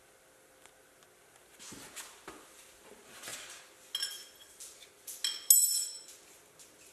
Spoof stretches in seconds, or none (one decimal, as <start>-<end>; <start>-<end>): none